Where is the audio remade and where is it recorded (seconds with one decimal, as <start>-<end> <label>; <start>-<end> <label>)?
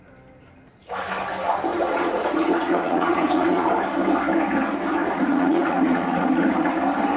0.0-1.7 recorded; 1.7-3.7 remade; 3.7-5.0 recorded; 5.0-6.7 remade; 6.7-7.2 recorded